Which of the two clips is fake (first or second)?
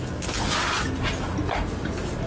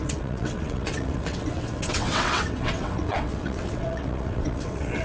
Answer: second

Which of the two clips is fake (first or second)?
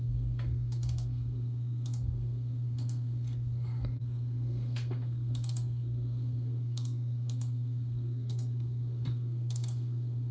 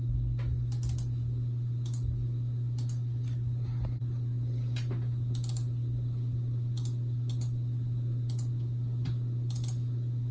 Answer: first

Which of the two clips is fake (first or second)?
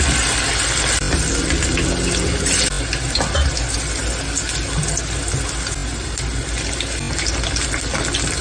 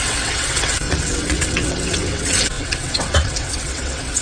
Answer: second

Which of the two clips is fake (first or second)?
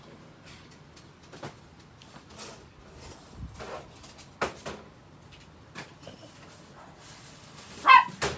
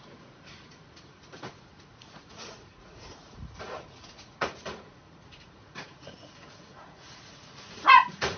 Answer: second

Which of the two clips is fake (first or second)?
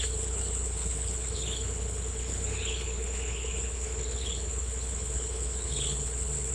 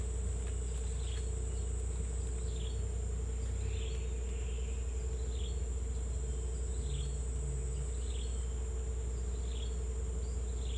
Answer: first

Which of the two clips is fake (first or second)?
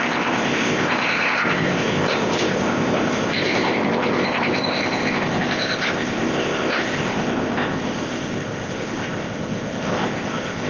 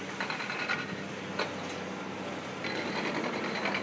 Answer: first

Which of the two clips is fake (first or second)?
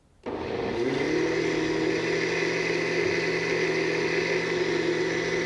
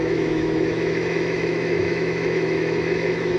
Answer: second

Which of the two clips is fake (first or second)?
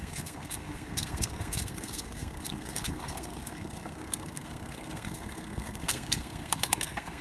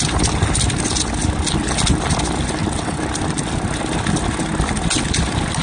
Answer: first